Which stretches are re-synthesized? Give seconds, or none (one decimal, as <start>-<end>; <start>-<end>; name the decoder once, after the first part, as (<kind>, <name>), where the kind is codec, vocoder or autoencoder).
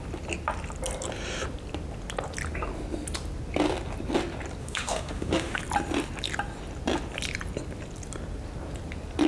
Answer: 4.6-5.6 (autoencoder, DAC-VAE)